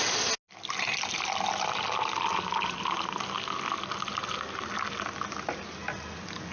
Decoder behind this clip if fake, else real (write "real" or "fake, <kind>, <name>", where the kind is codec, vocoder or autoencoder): real